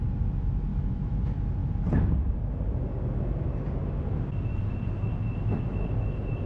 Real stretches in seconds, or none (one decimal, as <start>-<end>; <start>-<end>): 0.0-0.7; 1.2-6.5

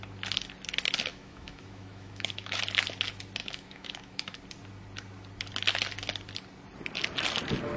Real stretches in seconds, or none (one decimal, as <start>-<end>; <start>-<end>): 0.0-1.1; 2.6-3.4; 4.4-7.8

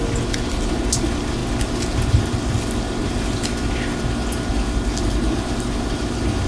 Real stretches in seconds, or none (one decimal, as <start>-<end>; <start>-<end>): 0.0-6.5

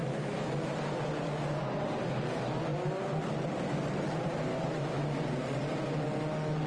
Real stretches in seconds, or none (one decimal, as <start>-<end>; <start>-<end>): 0.7-4.5; 5.2-6.7